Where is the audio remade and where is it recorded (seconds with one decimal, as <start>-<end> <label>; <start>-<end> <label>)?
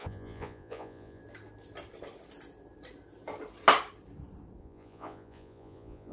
0.0-1.2 remade; 1.2-4.6 recorded; 4.6-6.1 remade